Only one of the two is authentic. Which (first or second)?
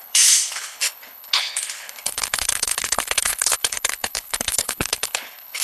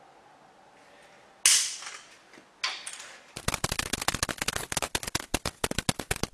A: second